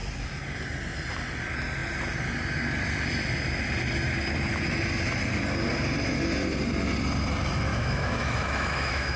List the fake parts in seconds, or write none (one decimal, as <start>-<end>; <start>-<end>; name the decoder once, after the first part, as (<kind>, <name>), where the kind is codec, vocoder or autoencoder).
7.7-9.2 (autoencoder, DAC-VAE)